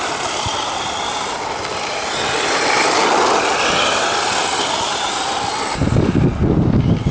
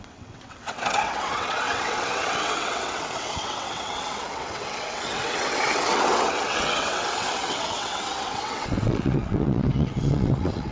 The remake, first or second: second